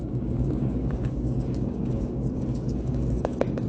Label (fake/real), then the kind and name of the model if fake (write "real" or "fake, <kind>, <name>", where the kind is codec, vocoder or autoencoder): fake, codec, DAC